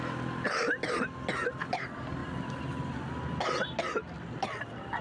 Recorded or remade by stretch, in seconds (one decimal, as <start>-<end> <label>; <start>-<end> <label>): 0.0-5.0 recorded